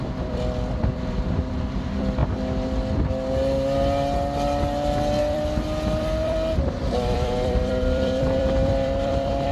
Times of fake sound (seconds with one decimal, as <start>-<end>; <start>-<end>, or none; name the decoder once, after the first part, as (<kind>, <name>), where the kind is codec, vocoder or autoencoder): 0.0-2.2 (vocoder, BigVGAN v2); 5.2-9.5